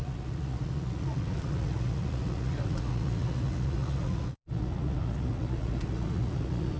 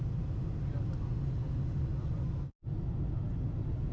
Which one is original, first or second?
second